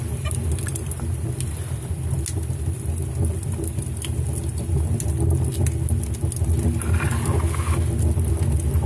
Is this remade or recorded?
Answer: recorded